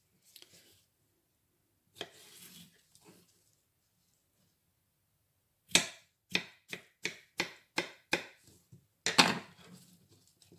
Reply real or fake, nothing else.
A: real